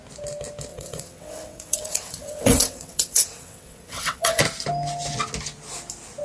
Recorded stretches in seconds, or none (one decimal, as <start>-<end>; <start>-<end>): 0.0-0.7; 4.4-6.2